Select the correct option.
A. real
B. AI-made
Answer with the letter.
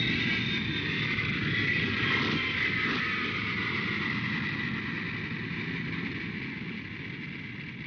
A